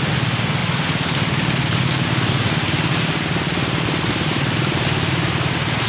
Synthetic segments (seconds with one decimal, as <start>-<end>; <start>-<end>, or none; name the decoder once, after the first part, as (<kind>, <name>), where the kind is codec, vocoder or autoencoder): none